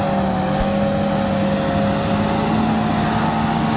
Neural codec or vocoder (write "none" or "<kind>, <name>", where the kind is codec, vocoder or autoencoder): none